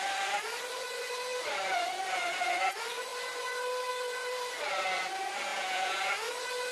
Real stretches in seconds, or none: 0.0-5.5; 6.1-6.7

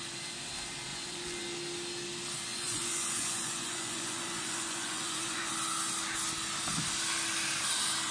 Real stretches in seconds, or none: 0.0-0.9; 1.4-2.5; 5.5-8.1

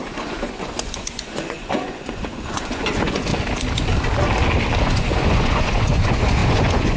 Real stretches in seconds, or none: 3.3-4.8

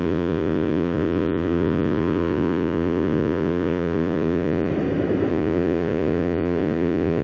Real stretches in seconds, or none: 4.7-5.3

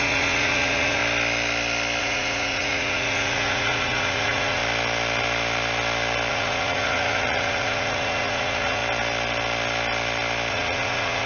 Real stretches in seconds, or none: 1.0-2.0; 4.6-6.3; 8.8-10.5